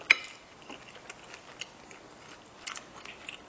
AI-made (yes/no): no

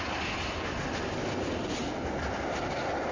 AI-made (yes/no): no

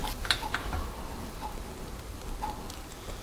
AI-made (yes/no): no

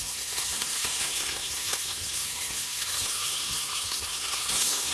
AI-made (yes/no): yes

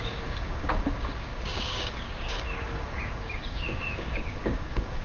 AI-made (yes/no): yes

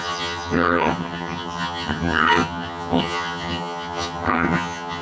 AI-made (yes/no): yes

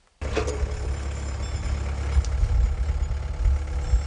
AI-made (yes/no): no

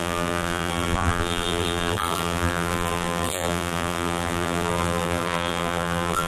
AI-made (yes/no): yes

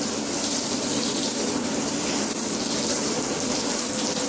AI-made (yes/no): no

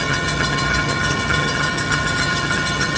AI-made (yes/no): yes